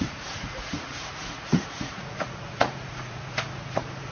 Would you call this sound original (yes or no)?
no